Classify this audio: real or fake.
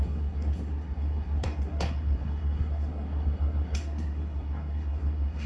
fake